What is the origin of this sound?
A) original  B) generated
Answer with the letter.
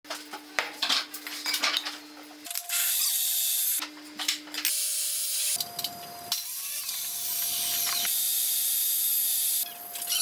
A